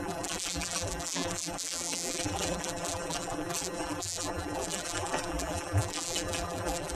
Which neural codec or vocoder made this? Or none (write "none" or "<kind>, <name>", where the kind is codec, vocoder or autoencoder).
vocoder, BigVGAN v2